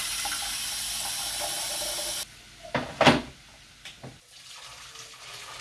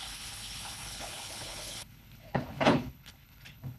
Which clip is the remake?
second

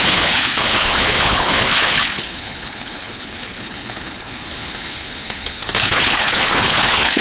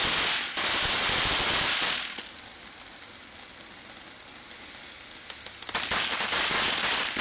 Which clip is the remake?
first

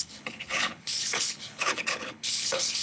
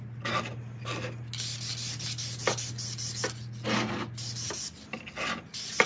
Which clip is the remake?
first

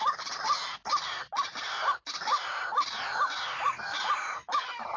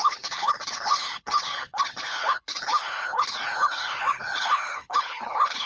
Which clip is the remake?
second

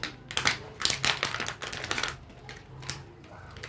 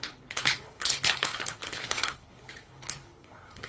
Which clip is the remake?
second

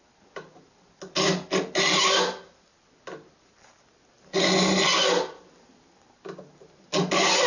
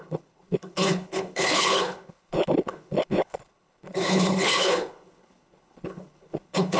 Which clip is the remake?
second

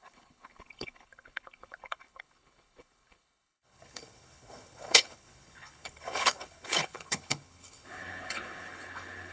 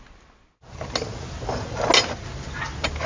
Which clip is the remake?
first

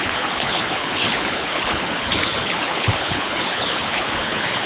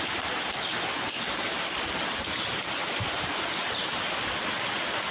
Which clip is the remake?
first